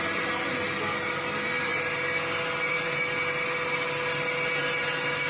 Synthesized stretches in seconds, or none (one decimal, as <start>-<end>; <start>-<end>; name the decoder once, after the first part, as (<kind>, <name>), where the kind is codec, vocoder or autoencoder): none